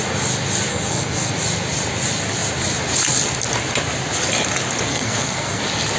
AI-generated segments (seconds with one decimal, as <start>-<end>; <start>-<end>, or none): 0.7-1.3; 4.9-5.6